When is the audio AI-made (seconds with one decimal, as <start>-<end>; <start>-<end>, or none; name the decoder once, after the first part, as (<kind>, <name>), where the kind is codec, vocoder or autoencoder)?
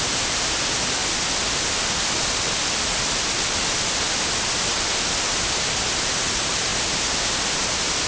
none